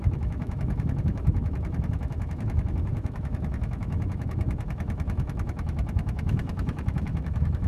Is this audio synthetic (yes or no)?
yes